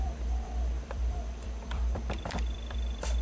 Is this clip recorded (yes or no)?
no